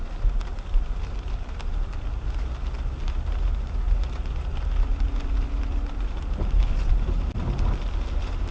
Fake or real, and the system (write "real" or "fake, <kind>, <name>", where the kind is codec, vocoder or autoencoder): real